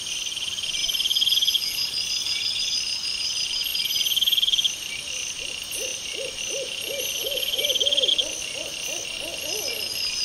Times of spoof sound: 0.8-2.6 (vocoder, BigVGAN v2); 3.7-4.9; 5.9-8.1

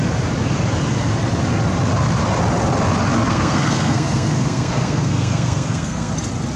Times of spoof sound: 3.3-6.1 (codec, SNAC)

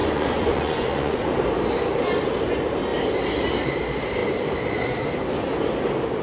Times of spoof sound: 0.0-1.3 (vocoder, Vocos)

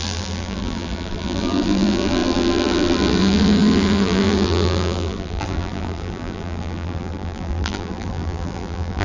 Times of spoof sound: 0.0-9.0 (vocoder, BigVGAN v2)

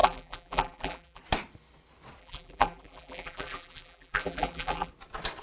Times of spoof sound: 0.0-1.2 (vocoder, BigVGAN v2); 2.2-4.9

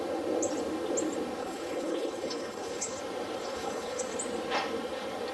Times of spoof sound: 1.4-3.0 (codec, HILCodec); 3.4-4.0